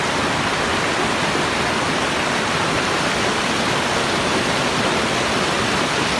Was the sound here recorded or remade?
recorded